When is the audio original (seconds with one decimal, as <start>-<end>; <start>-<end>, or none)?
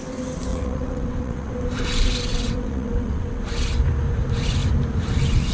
0.0-0.5; 1.5-2.3; 3.4-5.5